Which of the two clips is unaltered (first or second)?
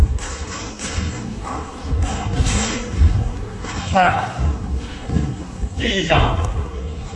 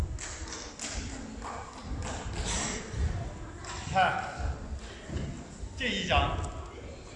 second